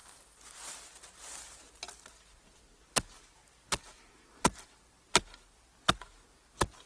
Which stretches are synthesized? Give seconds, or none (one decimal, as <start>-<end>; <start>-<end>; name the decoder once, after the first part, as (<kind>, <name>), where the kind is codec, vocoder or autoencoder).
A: none